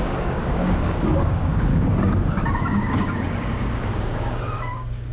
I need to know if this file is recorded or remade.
remade